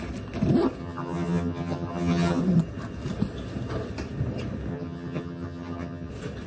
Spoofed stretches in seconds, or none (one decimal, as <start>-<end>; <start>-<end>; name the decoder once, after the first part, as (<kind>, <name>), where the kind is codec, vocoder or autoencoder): 0.8-2.4 (vocoder, HiFi-GAN); 4.7-6.1